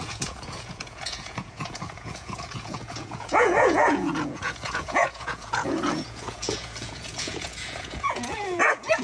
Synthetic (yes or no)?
yes